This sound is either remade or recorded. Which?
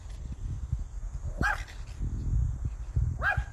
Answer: recorded